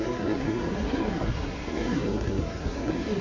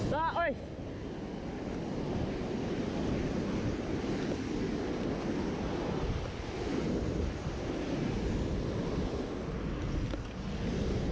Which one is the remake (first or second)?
first